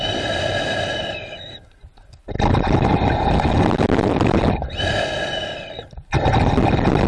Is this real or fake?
real